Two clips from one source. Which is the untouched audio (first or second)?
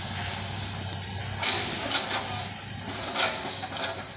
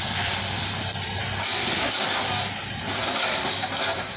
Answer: first